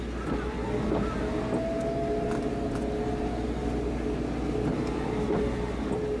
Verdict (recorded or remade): recorded